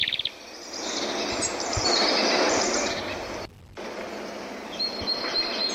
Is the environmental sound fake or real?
fake